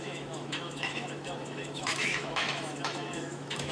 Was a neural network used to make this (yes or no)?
yes